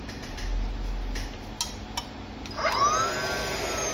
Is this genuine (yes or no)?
yes